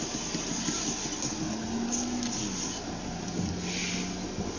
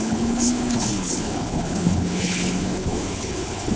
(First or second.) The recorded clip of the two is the first